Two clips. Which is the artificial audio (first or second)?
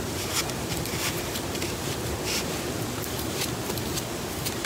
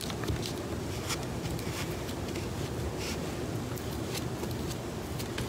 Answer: first